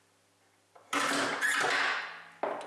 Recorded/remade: recorded